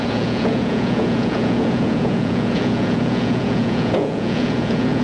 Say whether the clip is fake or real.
fake